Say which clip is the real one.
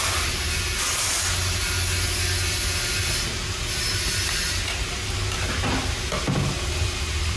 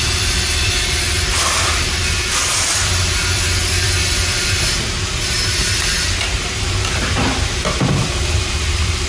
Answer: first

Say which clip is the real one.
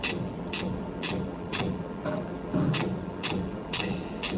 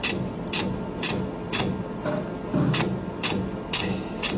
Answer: second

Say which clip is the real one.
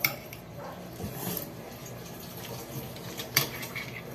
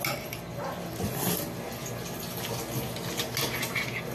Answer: second